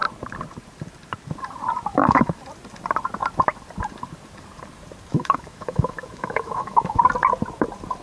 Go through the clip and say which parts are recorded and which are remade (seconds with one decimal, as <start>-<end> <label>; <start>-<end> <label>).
0.0-1.9 recorded; 1.9-2.4 remade; 2.4-5.1 recorded; 5.1-7.0 remade; 7.0-8.0 recorded